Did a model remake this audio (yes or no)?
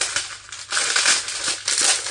no